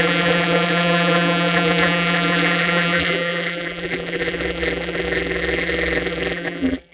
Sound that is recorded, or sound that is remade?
remade